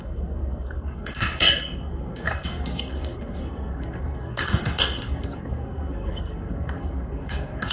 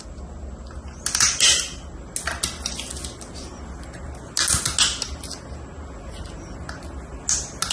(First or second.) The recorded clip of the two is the second